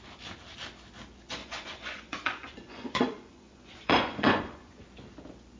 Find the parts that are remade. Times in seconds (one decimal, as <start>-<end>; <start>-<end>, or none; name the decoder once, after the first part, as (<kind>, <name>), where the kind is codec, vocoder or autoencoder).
1.4-4.8 (vocoder, Vocos)